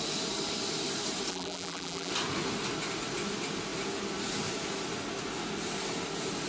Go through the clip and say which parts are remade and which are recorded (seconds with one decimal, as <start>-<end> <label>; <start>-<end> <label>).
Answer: 0.0-1.3 recorded; 1.3-2.1 remade; 2.1-6.5 recorded